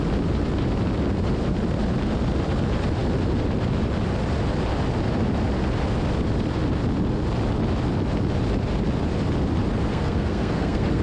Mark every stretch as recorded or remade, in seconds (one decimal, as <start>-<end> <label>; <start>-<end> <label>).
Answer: 0.0-9.9 recorded; 9.9-11.0 remade